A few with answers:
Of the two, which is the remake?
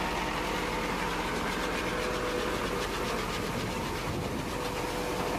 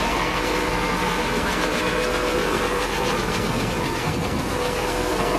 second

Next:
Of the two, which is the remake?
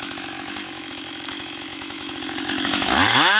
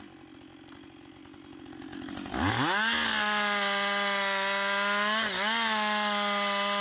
first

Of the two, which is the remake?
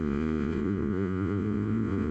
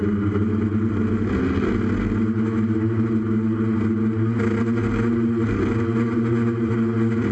first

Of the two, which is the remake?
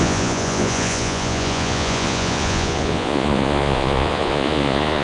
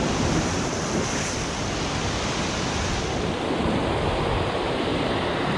first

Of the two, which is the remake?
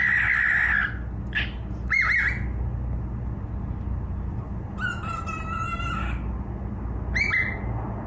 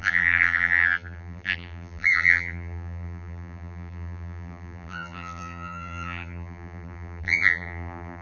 second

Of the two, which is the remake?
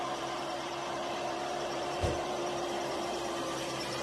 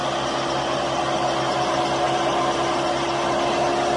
first